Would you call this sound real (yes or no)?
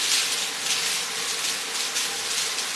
yes